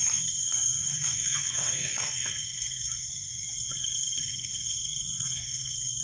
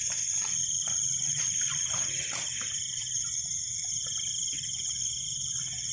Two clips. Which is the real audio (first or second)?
second